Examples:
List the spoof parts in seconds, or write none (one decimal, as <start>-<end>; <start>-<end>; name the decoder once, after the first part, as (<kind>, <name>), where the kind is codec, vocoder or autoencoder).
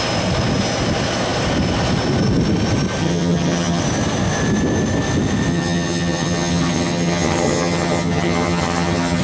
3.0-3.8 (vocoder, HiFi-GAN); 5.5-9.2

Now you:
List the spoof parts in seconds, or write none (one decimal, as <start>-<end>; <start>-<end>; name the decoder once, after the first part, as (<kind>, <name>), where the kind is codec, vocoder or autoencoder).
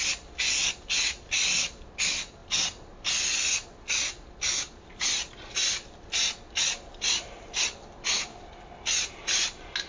none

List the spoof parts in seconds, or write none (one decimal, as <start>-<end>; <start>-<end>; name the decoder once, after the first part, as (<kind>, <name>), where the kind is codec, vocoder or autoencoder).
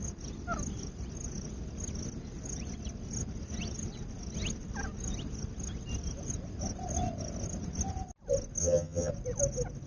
8.6-9.1 (vocoder, HiFi-GAN)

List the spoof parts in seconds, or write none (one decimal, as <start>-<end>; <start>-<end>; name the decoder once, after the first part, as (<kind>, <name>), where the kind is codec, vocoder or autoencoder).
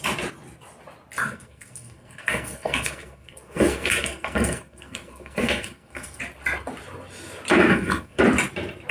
1.2-6.2 (codec, SNAC); 7.7-8.2